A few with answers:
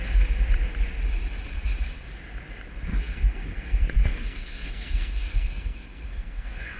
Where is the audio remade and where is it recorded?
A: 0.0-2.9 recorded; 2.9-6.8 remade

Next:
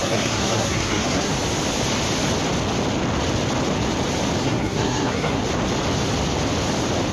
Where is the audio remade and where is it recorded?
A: 0.0-1.3 remade; 1.3-4.4 recorded; 4.4-5.4 remade; 5.4-7.1 recorded

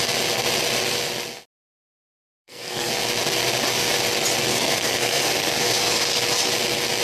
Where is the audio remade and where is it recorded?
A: 0.0-2.0 recorded; 2.0-2.9 remade; 2.9-4.5 recorded; 4.5-6.0 remade; 6.0-7.0 recorded

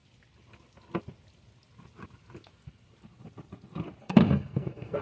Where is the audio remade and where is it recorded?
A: 0.0-4.0 recorded; 4.0-5.0 remade

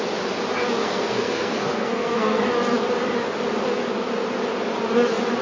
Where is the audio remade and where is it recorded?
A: 0.0-0.8 recorded; 0.8-2.4 remade; 2.4-5.4 recorded